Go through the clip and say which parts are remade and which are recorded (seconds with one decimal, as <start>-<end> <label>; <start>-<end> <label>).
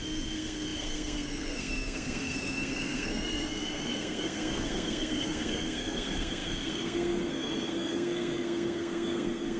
0.0-9.6 remade